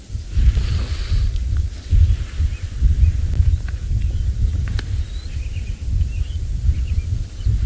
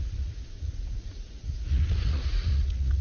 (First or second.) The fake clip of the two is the second